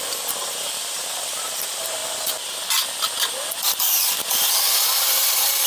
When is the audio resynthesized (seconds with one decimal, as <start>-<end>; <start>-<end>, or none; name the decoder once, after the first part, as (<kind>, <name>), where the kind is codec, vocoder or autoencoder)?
0.0-2.0 (vocoder, BigVGAN v2)